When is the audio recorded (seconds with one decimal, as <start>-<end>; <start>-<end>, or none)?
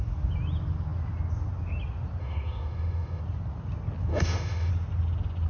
0.0-2.2; 3.2-4.1; 4.7-5.5